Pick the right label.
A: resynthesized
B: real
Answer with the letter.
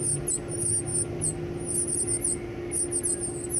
B